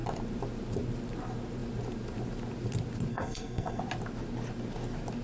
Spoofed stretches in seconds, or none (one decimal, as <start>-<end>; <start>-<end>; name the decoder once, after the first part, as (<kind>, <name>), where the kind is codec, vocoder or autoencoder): 3.1-3.8 (codec, SNAC)